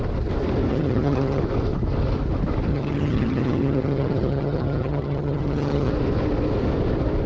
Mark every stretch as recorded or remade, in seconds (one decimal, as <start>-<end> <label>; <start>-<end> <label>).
0.0-0.7 recorded; 0.7-1.4 remade; 1.4-2.7 recorded; 2.7-5.9 remade; 5.9-7.3 recorded